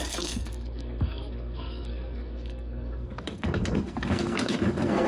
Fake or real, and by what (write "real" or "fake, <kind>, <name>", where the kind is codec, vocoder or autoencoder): fake, codec, SNAC